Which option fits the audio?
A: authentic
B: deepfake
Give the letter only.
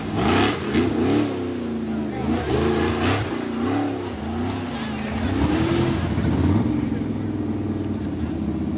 A